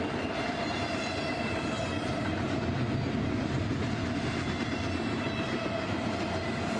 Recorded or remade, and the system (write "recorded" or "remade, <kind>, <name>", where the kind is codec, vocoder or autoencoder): recorded